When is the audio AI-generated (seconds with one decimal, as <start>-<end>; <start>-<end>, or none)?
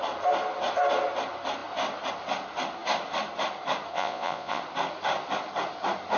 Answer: 3.9-4.6